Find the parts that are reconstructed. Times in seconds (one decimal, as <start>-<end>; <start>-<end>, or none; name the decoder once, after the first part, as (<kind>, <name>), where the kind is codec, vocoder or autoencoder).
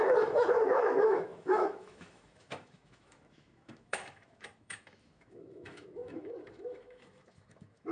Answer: 0.0-7.9 (autoencoder, DAC-VAE)